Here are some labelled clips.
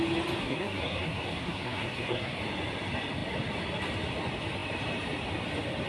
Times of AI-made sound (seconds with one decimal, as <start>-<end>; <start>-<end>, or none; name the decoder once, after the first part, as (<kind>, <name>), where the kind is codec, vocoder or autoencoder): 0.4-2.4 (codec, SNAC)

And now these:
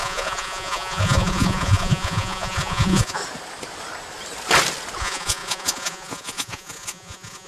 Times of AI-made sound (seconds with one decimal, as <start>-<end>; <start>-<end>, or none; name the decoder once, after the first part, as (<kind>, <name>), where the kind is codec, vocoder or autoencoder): 0.0-3.2 (vocoder, Vocos); 5.0-7.5

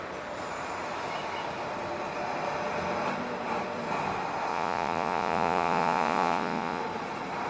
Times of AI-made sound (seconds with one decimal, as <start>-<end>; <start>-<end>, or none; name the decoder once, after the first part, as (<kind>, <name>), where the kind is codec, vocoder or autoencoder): 4.5-6.8 (vocoder, Vocos)

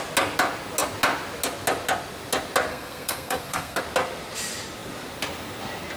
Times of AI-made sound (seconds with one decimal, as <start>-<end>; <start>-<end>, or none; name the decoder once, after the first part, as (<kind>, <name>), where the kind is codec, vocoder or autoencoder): 2.7-3.8 (codec, SNAC)